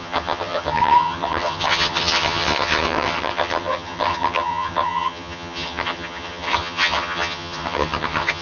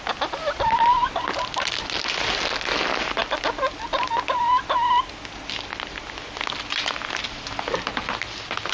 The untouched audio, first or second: second